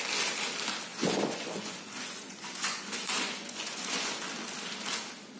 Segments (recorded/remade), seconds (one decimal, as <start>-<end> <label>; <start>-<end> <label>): 0.0-0.9 recorded; 0.9-4.1 remade; 4.1-5.4 recorded